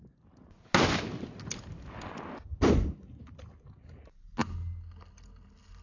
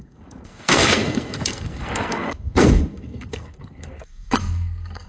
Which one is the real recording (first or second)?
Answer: first